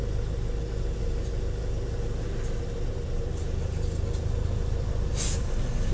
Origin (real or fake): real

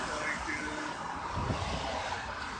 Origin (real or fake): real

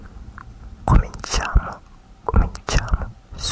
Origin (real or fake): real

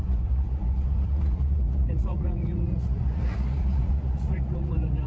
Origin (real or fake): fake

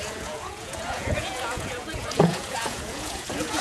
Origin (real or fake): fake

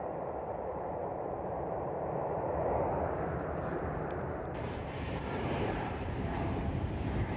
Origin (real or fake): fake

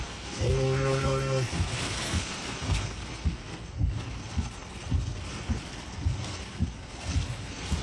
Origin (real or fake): fake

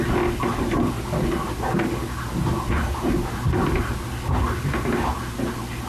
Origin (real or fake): real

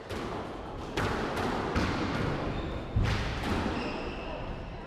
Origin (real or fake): real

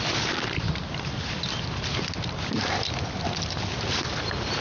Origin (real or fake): real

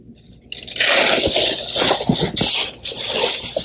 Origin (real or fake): real